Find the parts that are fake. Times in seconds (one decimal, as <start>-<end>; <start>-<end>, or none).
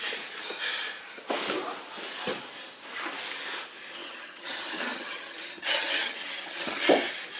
4.0-6.9